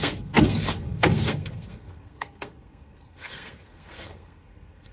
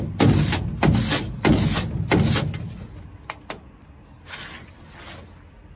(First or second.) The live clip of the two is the second